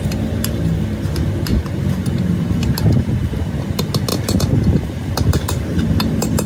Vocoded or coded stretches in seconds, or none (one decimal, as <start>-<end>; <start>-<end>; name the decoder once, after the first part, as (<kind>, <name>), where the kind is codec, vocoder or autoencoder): none